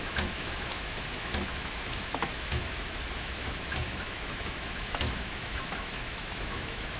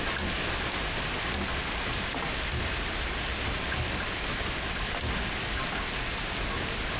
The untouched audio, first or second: second